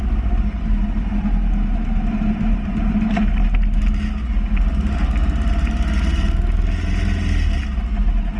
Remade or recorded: recorded